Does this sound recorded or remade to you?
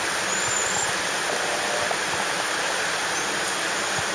recorded